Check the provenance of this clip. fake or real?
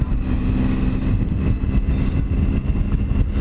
real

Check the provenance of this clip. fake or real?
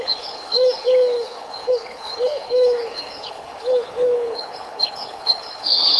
fake